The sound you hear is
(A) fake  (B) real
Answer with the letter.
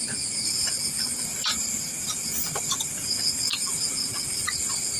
B